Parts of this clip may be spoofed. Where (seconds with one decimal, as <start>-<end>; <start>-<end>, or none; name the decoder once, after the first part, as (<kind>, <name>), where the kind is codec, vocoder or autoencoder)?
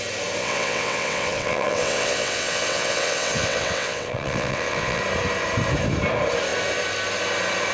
0.4-5.0 (vocoder, WaveNeXt)